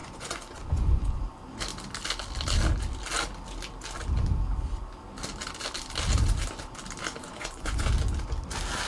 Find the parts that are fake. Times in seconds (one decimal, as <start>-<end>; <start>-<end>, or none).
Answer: 0.0-1.2; 7.2-7.9